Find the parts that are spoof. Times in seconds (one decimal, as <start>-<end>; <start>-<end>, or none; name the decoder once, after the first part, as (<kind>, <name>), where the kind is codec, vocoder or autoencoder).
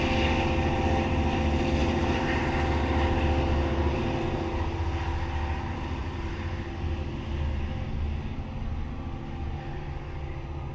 1.8-2.4 (vocoder, BigVGAN v2)